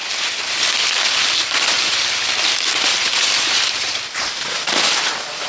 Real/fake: real